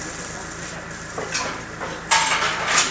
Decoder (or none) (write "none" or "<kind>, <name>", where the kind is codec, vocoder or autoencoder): none